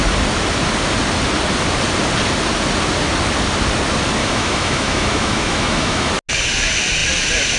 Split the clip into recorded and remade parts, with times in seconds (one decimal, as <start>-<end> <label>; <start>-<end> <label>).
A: 0.0-4.2 recorded; 4.2-6.1 remade; 6.1-7.6 recorded